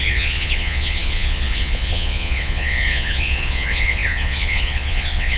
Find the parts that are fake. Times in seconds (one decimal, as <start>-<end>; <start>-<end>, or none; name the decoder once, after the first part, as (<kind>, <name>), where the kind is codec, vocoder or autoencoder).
0.0-5.4 (vocoder, Vocos)